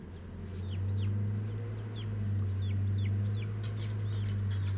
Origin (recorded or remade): recorded